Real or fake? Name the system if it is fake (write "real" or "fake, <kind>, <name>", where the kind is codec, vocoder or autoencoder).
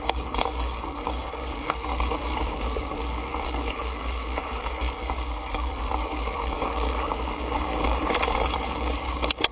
fake, codec, DAC